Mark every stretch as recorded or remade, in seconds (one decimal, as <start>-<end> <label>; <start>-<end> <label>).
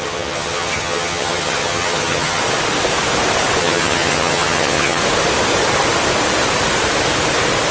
0.0-2.4 remade; 2.4-3.6 recorded; 3.6-5.0 remade; 5.0-7.7 recorded